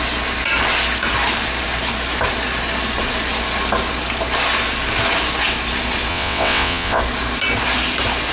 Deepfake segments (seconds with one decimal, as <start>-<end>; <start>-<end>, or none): 6.1-7.0